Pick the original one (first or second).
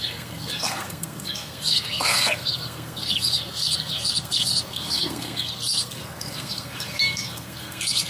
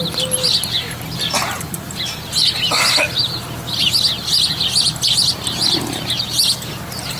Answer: second